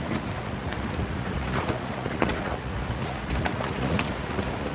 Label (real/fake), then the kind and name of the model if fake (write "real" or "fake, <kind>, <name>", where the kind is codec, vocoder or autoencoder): fake, vocoder, Vocos